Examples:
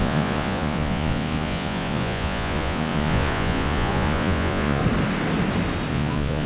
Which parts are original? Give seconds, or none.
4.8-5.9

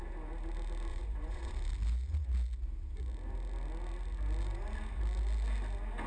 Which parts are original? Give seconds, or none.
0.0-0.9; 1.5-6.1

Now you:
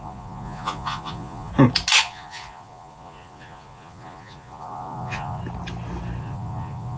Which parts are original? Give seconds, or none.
1.5-2.0; 5.4-6.2